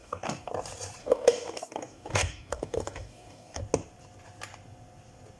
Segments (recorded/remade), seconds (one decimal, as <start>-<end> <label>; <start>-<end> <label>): 0.0-0.5 remade; 0.5-1.0 recorded; 1.0-3.6 remade; 3.6-5.4 recorded